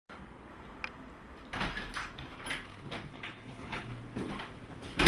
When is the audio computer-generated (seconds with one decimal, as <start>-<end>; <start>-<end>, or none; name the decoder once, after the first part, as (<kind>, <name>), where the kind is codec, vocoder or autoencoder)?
3.1-3.9 (codec, HILCodec)